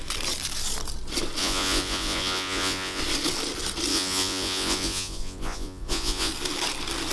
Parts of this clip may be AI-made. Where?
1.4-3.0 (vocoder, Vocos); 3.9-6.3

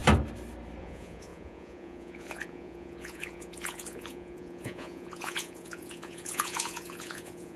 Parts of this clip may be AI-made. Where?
0.8-7.6 (vocoder, Vocos)

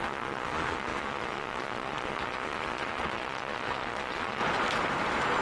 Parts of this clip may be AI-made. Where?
0.0-4.4 (vocoder, Vocos)

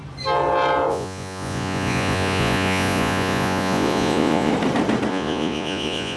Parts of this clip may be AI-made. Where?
0.9-4.5 (vocoder, Vocos); 5.1-6.2

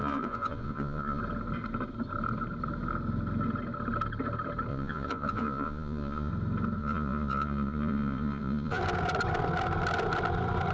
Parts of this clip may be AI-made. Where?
0.0-1.2 (vocoder, Vocos); 4.7-6.3; 6.8-8.8

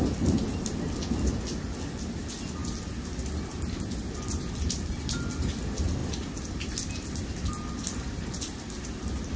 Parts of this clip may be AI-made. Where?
none